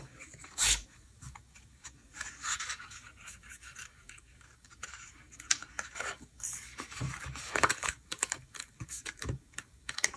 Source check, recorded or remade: remade